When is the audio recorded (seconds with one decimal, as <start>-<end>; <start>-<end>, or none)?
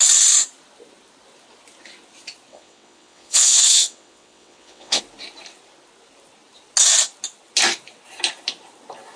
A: 0.0-2.5; 5.0-9.2